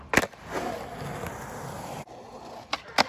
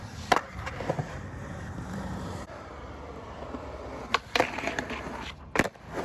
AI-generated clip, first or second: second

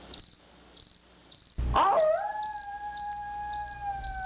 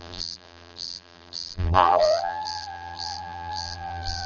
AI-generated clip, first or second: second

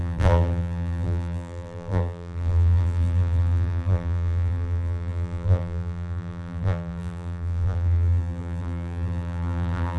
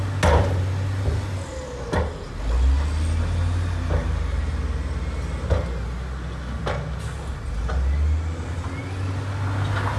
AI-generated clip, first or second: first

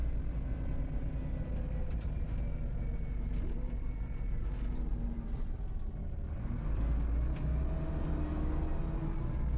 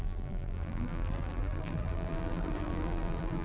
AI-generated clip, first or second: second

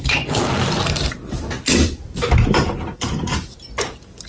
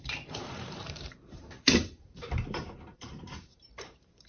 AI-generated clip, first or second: second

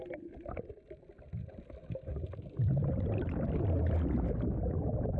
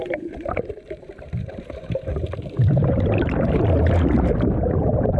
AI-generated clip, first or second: second